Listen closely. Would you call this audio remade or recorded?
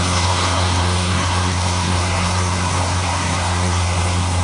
remade